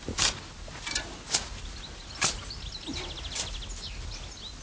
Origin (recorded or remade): recorded